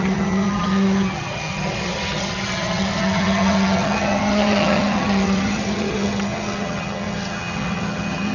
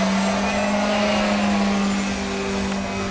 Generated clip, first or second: first